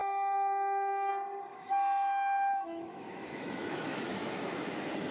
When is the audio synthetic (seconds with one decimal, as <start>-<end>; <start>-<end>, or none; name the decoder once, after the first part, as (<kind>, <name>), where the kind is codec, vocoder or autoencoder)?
0.0-1.1 (autoencoder, DAC-VAE); 1.5-4.3